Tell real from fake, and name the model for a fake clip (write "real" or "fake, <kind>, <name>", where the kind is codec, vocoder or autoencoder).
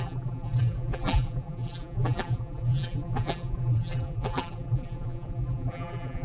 fake, vocoder, BigVGAN v2